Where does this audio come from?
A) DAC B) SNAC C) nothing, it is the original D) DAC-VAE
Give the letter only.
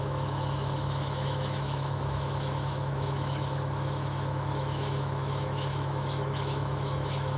D